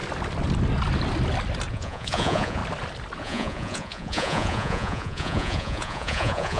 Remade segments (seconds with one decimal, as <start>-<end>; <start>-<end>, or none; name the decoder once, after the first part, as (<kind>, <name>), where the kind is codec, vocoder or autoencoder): 1.7-2.6 (vocoder, Vocos); 3.2-6.6

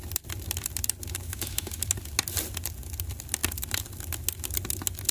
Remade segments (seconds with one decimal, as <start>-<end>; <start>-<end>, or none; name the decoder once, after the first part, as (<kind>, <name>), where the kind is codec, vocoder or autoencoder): 1.2-1.8 (autoencoder, DAC-VAE)

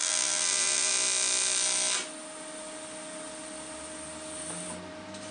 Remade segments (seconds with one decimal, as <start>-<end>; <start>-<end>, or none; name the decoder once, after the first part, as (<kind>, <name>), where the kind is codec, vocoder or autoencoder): 0.0-0.9 (vocoder, BigVGAN v2)

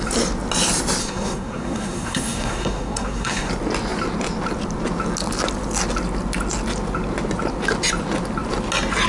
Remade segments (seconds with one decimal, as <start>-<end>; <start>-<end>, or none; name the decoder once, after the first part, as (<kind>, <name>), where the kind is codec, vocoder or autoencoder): 1.0-3.5 (codec, SNAC)

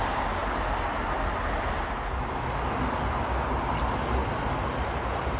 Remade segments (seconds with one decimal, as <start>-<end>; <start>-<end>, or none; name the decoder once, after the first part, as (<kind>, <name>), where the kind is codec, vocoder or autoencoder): none

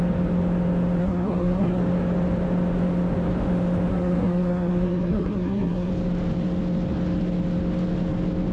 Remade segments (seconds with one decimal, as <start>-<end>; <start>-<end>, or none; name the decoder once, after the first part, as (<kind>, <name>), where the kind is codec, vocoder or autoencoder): 1.0-1.8 (codec, SNAC); 3.9-5.9